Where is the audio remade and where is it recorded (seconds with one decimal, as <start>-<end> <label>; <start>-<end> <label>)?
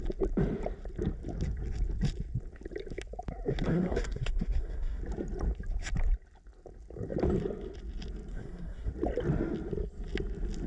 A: 0.0-3.7 recorded; 3.7-5.0 remade; 5.0-8.3 recorded; 8.3-8.9 remade; 8.9-10.7 recorded